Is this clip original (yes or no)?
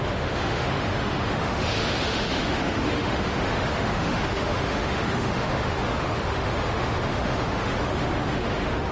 no